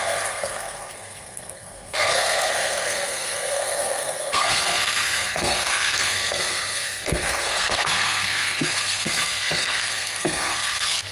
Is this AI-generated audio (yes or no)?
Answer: yes